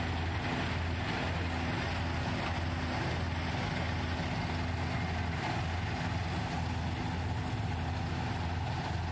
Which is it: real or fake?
real